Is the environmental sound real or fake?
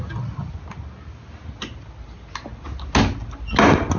real